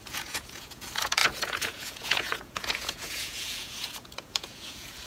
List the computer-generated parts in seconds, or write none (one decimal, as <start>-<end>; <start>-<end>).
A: 0.0-5.1